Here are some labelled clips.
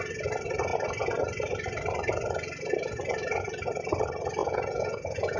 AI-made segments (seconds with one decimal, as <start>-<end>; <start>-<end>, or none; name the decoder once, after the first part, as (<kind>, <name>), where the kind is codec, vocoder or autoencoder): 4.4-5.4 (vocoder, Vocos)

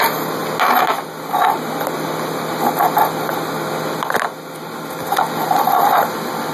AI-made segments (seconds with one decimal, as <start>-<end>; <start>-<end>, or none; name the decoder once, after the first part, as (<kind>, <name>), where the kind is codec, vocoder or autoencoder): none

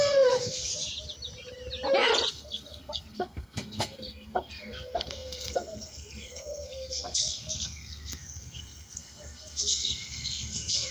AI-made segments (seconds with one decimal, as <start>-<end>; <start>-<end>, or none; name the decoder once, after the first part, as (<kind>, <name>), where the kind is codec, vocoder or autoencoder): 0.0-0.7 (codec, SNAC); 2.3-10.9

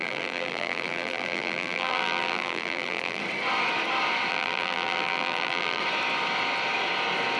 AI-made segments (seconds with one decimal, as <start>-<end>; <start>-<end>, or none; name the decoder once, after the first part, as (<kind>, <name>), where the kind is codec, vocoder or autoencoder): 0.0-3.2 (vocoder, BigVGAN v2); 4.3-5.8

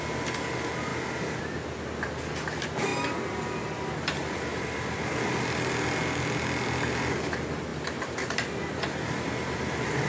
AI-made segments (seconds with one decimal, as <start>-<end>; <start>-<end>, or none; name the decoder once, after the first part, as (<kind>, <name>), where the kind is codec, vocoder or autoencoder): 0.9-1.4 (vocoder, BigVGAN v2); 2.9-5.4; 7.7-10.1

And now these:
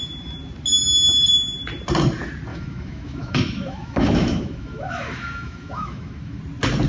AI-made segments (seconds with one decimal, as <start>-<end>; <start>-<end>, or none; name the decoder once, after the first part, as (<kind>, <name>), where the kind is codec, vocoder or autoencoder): 2.5-6.4 (autoencoder, DAC-VAE)

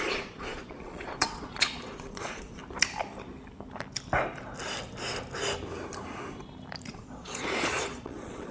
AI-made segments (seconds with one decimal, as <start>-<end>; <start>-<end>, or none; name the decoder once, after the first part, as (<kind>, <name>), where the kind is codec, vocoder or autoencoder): 0.0-2.6 (vocoder, Vocos); 6.8-8.5